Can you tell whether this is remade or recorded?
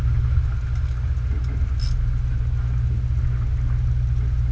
recorded